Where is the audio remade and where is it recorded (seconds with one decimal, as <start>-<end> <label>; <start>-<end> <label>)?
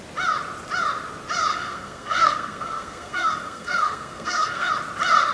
0.0-1.5 recorded; 1.5-4.7 remade; 4.7-5.3 recorded